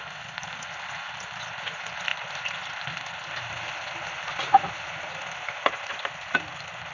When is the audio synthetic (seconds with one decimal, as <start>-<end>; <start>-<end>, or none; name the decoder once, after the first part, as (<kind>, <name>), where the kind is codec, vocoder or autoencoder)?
none